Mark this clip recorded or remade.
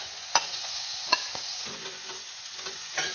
remade